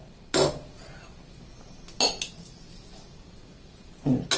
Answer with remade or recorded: recorded